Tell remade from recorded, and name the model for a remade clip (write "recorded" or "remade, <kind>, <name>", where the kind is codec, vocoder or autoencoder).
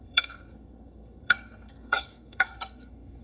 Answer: remade, codec, SNAC